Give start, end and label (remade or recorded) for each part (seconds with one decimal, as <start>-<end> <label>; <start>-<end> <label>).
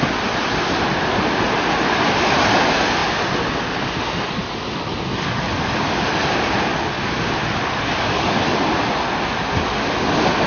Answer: 0.0-10.5 recorded